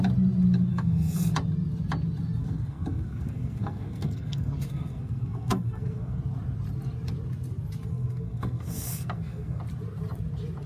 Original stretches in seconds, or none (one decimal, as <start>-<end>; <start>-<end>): 0.0-0.7; 1.3-2.4; 6.2-7.9; 9.6-10.7